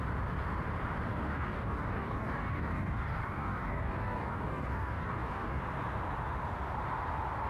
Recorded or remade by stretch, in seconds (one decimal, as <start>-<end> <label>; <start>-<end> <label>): 0.0-1.1 recorded; 1.1-5.6 remade; 5.6-7.5 recorded